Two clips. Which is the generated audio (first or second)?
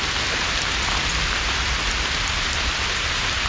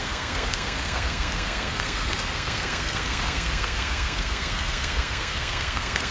second